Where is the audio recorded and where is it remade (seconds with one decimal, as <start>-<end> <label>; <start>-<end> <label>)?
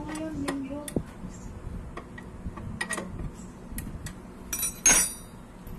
0.0-5.8 recorded